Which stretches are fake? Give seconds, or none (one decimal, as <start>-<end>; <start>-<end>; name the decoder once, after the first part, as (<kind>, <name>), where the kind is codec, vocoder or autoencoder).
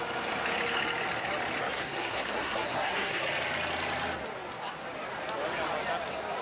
1.6-3.2 (codec, SNAC)